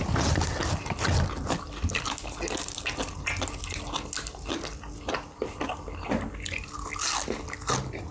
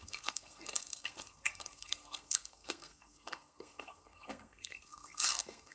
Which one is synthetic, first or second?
second